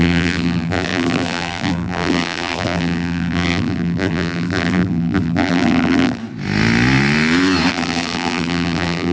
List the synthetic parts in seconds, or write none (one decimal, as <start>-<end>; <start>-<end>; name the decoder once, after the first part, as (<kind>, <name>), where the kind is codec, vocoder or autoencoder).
0.0-6.2 (vocoder, BigVGAN v2); 7.7-9.1